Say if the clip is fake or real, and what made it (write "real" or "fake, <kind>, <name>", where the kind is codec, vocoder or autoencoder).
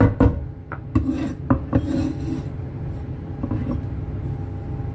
real